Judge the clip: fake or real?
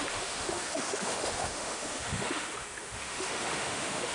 fake